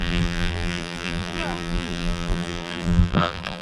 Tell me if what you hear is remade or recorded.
remade